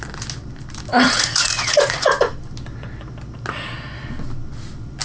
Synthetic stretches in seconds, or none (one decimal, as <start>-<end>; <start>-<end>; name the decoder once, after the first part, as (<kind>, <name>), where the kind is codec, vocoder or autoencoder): 0.9-2.3 (vocoder, Vocos)